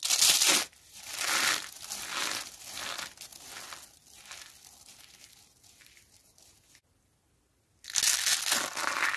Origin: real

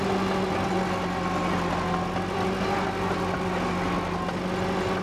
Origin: real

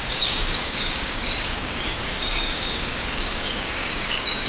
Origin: fake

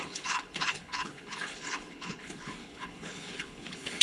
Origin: fake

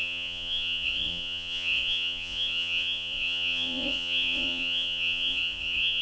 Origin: fake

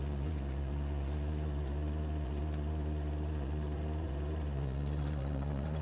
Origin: fake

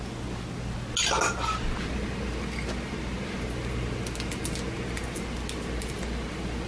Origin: real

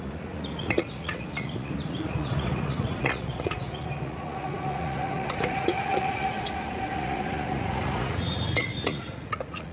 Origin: fake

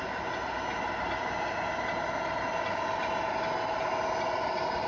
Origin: real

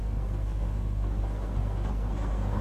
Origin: fake